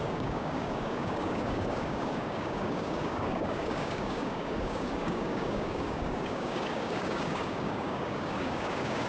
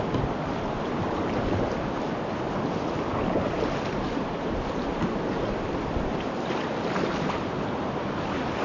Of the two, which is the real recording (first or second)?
second